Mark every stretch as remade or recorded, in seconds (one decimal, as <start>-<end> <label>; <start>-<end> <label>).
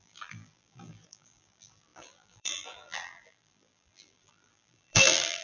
0.0-5.4 remade